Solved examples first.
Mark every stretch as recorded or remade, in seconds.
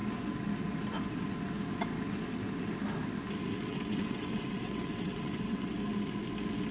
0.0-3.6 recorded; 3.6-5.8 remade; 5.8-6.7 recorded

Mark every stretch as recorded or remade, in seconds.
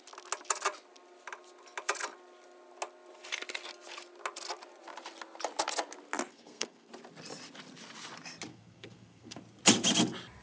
0.0-6.3 recorded; 6.3-6.9 remade; 6.9-8.5 recorded; 8.5-9.4 remade; 9.4-10.4 recorded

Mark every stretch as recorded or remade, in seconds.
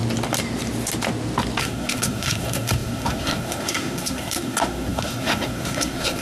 0.0-1.6 recorded; 1.6-6.2 remade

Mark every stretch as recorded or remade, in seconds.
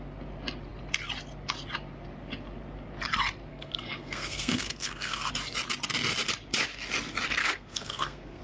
0.0-3.5 recorded; 3.5-5.3 remade; 5.3-7.4 recorded; 7.4-8.4 remade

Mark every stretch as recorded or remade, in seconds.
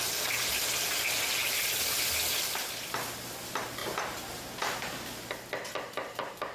0.0-6.5 recorded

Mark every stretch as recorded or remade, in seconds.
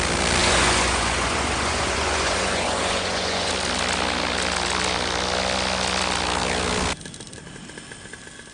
0.0-0.4 recorded; 0.4-3.5 remade; 3.5-8.5 recorded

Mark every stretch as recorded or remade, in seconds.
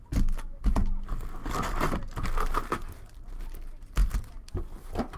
0.0-5.2 recorded